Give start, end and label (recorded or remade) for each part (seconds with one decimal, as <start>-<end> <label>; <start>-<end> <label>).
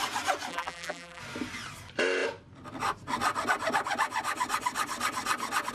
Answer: 0.0-0.5 recorded; 0.5-1.2 remade; 1.2-5.7 recorded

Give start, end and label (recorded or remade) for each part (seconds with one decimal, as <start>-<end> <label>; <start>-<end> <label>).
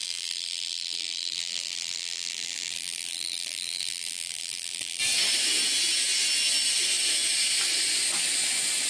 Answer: 0.0-5.0 remade; 5.0-8.9 recorded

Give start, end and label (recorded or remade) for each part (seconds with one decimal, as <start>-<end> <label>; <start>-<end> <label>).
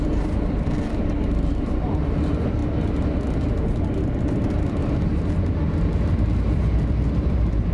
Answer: 0.0-2.6 remade; 2.6-4.6 recorded; 4.6-5.1 remade; 5.1-5.8 recorded; 5.8-7.7 remade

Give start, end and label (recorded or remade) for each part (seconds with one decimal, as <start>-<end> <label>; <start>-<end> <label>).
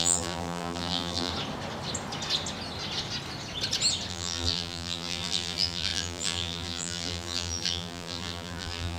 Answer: 0.0-1.3 remade; 1.3-4.1 recorded; 4.1-9.0 remade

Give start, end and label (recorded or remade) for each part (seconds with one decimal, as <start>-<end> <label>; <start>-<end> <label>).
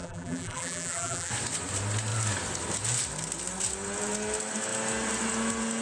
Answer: 0.0-1.3 remade; 1.3-5.8 recorded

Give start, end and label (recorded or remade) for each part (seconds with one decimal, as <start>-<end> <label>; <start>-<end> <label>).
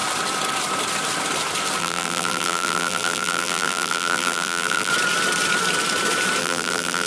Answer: 0.0-1.8 recorded; 1.8-4.9 remade; 4.9-6.4 recorded; 6.4-7.1 remade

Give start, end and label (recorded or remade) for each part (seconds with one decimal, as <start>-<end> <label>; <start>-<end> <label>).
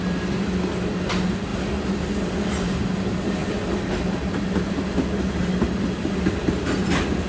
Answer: 0.0-3.4 recorded; 3.4-6.5 remade; 6.5-7.3 recorded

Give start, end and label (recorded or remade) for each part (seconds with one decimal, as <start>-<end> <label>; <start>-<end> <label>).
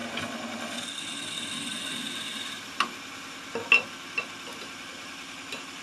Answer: 0.0-5.8 recorded